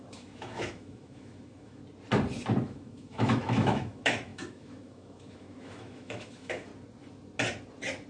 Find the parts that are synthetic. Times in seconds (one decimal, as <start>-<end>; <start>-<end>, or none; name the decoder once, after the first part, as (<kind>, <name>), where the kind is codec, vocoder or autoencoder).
0.0-1.8 (autoencoder, DAC-VAE); 2.6-6.7